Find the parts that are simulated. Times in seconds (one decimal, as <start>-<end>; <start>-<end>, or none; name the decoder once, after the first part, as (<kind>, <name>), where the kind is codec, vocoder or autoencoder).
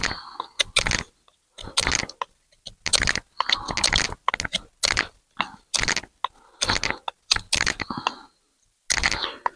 none